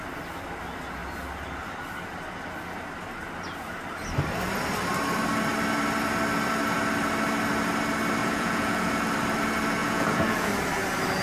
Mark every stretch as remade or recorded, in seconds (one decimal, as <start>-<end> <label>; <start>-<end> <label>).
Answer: 0.0-8.2 recorded; 8.2-8.9 remade; 8.9-9.8 recorded; 9.8-10.5 remade; 10.5-11.2 recorded